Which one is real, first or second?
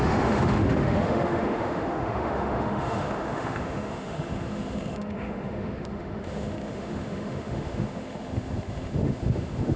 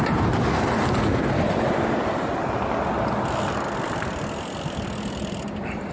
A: second